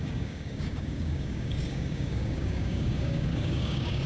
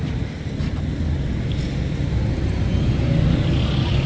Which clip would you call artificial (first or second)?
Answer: first